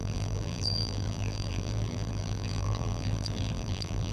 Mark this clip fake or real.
fake